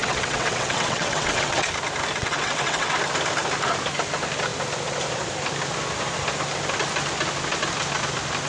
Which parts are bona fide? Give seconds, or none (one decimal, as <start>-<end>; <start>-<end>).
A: 1.7-2.2; 2.9-8.5